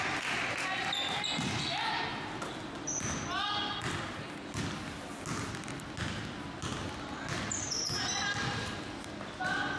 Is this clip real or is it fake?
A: real